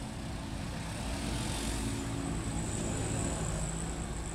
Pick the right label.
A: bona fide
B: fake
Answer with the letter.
A